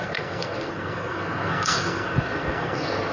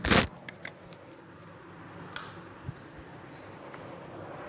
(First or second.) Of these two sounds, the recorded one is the second